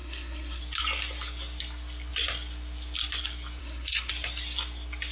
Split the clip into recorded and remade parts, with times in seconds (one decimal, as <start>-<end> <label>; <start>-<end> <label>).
0.0-0.6 remade; 0.6-3.6 recorded; 3.6-4.1 remade; 4.1-5.1 recorded